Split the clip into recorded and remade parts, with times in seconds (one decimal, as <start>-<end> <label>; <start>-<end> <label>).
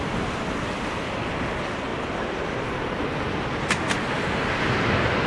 0.0-5.3 recorded